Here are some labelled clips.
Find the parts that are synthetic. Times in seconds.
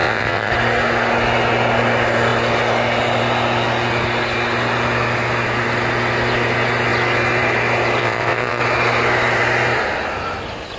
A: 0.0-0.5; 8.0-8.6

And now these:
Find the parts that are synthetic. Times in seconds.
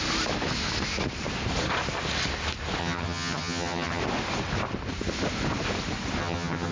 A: 2.8-4.0; 6.2-6.7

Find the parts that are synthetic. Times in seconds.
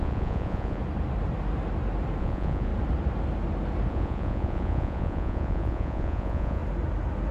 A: 0.0-0.8; 2.2-2.7; 3.9-6.6